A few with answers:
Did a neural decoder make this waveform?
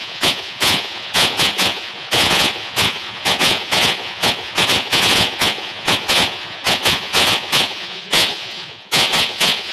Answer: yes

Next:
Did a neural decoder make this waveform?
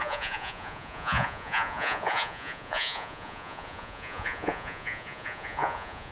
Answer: yes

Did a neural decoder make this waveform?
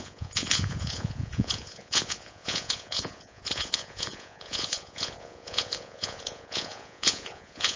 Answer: yes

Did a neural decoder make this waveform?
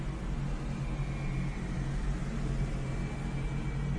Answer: no